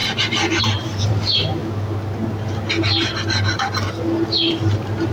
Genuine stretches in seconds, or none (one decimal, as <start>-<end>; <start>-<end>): 1.6-5.1